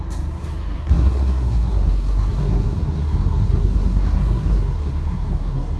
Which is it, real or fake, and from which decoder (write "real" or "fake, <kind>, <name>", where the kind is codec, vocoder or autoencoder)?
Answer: fake, codec, SNAC